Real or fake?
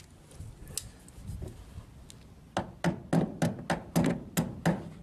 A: real